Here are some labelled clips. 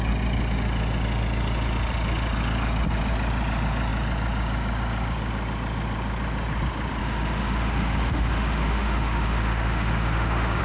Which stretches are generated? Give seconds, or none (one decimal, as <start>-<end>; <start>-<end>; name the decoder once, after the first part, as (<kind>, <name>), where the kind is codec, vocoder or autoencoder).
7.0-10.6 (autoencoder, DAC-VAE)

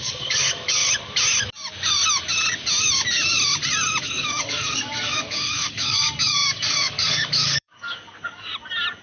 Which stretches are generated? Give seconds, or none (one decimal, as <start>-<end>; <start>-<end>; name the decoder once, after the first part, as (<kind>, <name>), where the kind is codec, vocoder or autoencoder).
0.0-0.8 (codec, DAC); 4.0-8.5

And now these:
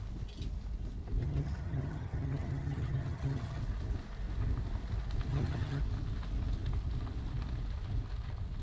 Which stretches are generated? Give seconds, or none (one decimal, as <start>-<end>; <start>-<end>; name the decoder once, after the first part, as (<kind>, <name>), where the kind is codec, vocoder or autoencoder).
1.2-3.6 (vocoder, HiFi-GAN); 5.3-5.8